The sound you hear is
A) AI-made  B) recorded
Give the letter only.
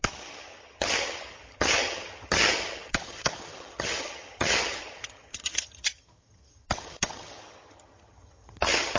A